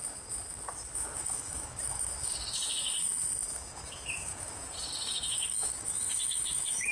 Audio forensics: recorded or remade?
remade